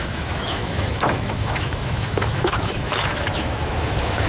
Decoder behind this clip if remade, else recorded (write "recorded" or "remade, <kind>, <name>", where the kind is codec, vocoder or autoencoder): remade, autoencoder, DAC-VAE